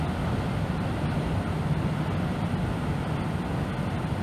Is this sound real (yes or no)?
yes